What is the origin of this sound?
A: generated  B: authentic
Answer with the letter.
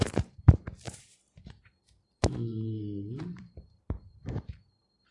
A